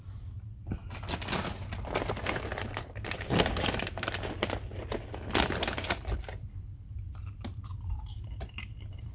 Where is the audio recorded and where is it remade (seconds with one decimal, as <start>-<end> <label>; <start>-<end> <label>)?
0.0-0.8 remade; 0.8-5.4 recorded; 5.4-9.1 remade